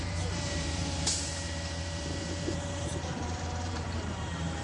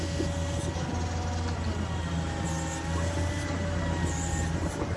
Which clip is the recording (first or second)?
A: second